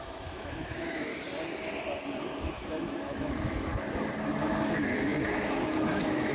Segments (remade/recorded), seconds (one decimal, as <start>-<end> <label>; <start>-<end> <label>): 0.0-1.1 remade; 1.1-2.5 recorded; 2.5-3.7 remade; 3.7-4.5 recorded; 4.5-6.3 remade